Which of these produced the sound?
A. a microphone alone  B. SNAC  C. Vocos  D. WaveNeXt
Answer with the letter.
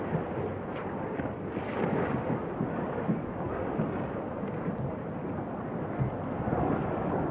A